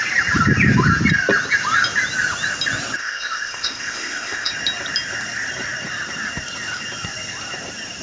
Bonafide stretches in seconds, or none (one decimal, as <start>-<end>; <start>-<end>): 0.0-3.0; 4.5-8.0

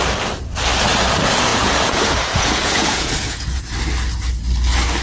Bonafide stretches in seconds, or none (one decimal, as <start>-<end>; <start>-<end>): 0.0-1.5; 3.6-5.0

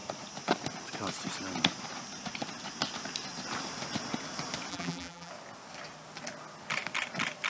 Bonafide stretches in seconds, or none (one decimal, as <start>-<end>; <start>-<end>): 0.0-4.7; 5.3-7.5

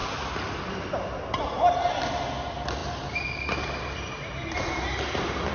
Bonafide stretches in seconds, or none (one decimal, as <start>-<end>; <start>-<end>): 0.0-2.8